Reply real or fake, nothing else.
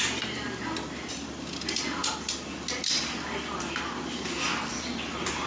real